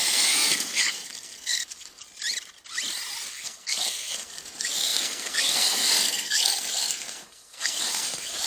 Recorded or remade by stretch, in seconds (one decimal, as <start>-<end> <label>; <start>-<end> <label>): 0.0-2.0 remade; 2.0-3.3 recorded; 3.3-8.5 remade